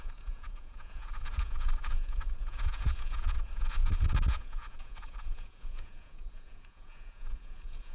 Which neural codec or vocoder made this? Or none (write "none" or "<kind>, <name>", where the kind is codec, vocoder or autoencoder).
vocoder, Vocos